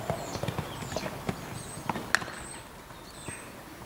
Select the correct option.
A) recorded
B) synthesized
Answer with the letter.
A